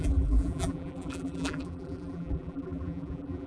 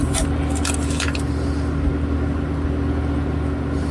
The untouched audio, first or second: second